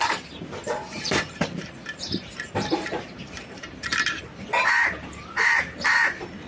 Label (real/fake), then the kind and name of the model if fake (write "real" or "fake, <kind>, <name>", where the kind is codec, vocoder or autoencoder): fake, vocoder, BigVGAN v2